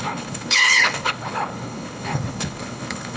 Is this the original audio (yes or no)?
no